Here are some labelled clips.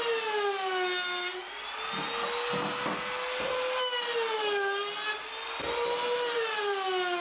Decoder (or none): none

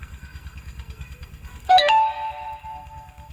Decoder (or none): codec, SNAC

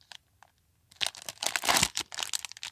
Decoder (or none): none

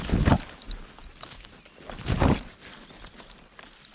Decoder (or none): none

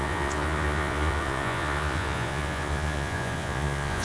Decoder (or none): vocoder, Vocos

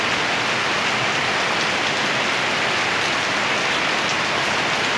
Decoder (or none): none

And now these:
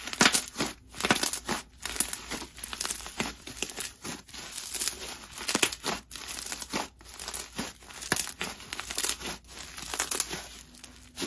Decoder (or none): none